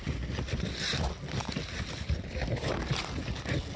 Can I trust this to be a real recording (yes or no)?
yes